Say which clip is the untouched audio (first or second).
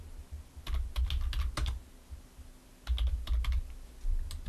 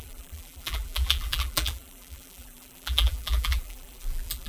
first